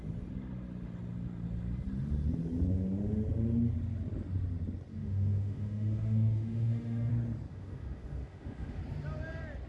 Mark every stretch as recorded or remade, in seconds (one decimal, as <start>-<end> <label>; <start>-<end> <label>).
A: 0.0-4.9 recorded; 4.9-7.1 remade; 7.1-7.5 recorded; 7.5-8.8 remade; 8.8-9.7 recorded